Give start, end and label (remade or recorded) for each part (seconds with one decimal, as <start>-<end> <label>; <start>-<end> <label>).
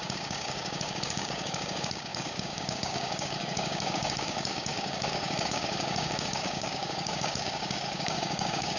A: 0.0-8.8 remade